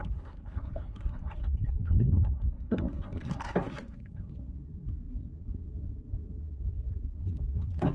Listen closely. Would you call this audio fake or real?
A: fake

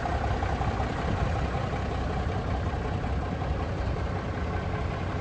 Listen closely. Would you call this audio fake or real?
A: real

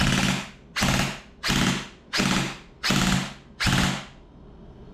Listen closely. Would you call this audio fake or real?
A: real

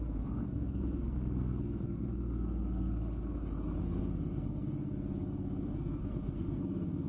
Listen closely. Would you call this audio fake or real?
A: fake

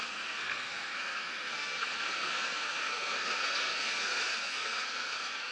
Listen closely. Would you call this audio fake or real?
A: fake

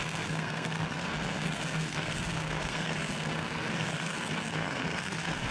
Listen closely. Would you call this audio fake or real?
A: fake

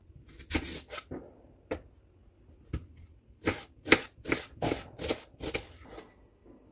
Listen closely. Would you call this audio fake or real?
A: real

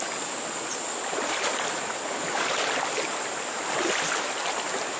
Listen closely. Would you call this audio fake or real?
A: real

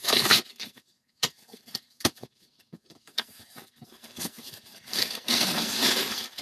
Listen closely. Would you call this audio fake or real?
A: fake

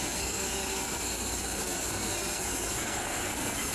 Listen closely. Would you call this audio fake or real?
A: fake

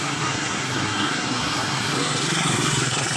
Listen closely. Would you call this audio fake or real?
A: fake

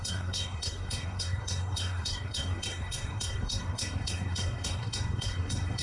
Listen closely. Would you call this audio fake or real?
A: fake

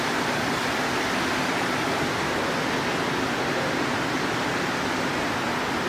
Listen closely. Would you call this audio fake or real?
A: real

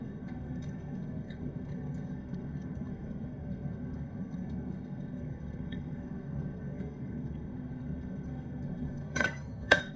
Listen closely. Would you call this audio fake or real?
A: fake